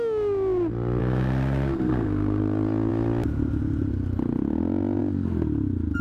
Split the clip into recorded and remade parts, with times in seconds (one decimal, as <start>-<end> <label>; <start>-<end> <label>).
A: 0.0-1.0 recorded; 1.0-2.4 remade; 2.4-6.0 recorded